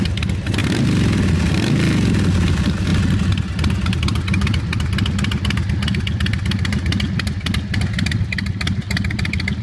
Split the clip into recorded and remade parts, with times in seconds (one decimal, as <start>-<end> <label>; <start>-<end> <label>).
0.0-0.6 remade; 0.6-2.5 recorded; 2.5-2.9 remade; 2.9-4.0 recorded; 4.0-4.7 remade; 4.7-9.6 recorded